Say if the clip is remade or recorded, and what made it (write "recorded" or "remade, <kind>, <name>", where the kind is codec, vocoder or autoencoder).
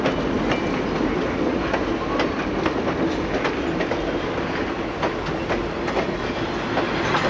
recorded